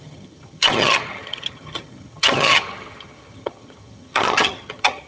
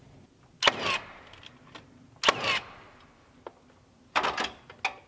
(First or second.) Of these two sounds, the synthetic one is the first